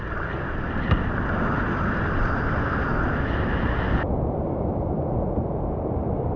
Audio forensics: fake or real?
real